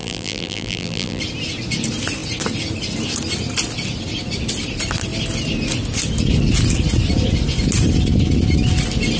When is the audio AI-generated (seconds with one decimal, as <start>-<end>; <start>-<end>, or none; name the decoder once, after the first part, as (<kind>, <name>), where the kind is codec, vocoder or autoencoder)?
0.0-1.2 (vocoder, BigVGAN v2)